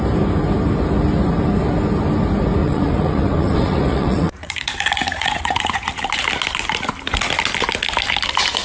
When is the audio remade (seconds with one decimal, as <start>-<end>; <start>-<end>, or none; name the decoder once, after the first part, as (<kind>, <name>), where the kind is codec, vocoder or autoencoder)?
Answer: 2.6-5.9 (vocoder, Vocos)

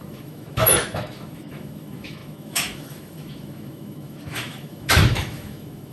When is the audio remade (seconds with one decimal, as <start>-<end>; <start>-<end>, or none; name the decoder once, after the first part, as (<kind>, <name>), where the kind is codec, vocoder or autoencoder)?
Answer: 0.0-5.9 (autoencoder, DAC-VAE)

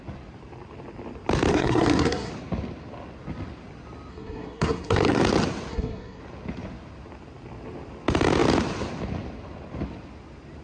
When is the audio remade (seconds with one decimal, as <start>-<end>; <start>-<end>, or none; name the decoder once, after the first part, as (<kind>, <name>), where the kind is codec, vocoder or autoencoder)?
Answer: 1.5-2.3 (codec, SNAC); 4.1-5.2; 5.7-6.2

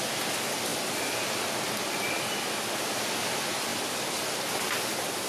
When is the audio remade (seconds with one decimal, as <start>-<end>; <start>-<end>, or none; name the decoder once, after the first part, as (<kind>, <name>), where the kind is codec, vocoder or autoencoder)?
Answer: none

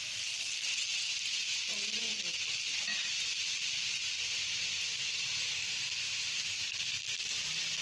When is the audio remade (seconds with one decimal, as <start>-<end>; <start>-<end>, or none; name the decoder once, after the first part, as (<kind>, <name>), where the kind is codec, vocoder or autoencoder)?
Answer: none

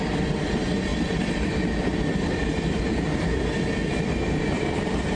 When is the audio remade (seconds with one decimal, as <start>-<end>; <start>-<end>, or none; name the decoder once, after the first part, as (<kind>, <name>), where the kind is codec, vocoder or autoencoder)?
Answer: none

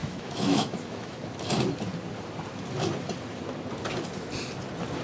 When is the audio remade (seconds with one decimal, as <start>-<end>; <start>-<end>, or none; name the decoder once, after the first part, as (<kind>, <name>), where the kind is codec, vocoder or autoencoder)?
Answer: 0.0-1.2 (autoencoder, DAC-VAE)